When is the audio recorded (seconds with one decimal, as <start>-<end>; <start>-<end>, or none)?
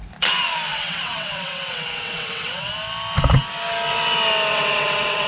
0.0-0.7; 2.7-4.5